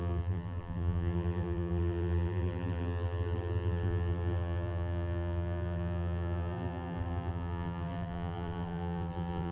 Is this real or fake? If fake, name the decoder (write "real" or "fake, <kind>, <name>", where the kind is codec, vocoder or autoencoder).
fake, vocoder, BigVGAN v2